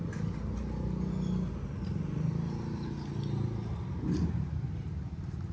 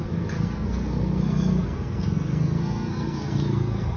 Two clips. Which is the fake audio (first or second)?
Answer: second